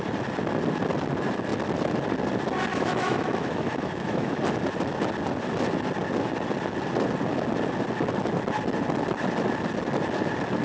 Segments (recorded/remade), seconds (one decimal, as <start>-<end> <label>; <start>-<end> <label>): 0.0-2.7 recorded; 2.7-4.4 remade; 4.4-10.6 recorded